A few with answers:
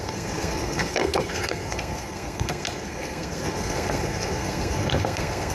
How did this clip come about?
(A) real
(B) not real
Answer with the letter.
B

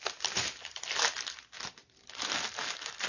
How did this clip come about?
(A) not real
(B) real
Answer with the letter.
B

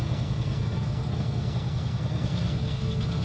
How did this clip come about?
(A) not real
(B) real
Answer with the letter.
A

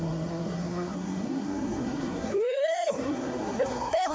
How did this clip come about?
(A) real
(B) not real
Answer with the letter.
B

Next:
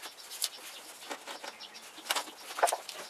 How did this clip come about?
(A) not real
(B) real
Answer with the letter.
B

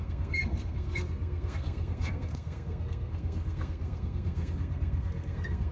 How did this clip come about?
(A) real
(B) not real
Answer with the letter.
B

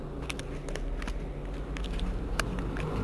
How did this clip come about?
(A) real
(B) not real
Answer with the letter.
A